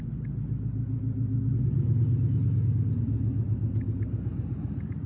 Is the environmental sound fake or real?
real